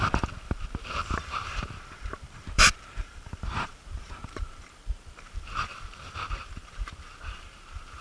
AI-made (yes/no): yes